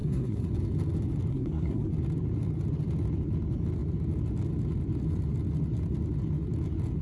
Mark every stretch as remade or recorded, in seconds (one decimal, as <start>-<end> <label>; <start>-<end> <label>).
0.0-0.5 remade; 0.5-1.3 recorded; 1.3-1.9 remade; 1.9-7.0 recorded